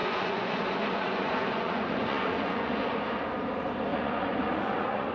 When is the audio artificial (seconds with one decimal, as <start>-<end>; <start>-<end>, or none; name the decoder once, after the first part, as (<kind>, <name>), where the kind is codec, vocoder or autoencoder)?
0.0-3.0 (vocoder, Vocos); 3.9-5.1